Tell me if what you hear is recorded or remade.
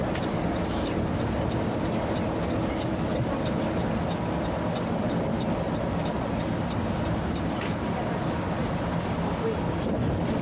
recorded